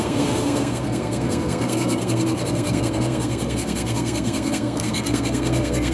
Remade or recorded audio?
remade